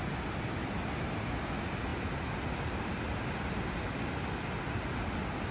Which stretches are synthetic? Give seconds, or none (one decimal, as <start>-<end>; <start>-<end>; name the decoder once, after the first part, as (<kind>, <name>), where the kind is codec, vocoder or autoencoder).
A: none